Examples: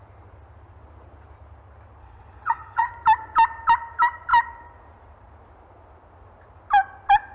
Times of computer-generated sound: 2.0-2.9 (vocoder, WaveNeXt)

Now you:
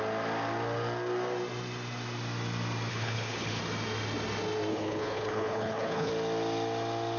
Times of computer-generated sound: 2.9-3.6 (codec, HILCodec); 4.7-6.1

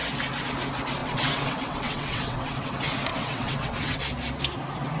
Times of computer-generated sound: 1.0-2.7 (vocoder, WaveNeXt); 3.1-4.0

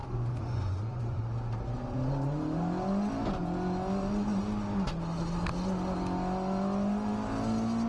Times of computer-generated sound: 0.0-1.2 (vocoder, Vocos)

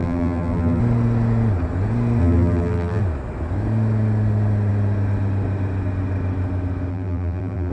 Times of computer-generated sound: 0.0-0.8 (vocoder, BigVGAN v2); 2.2-3.0; 6.9-7.7

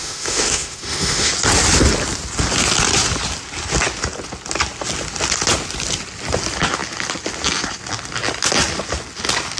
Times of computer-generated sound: 0.0-1.3 (autoencoder, DAC-VAE)

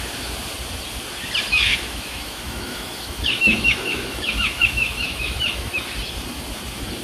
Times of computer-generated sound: 1.5-5.7 (autoencoder, DAC-VAE)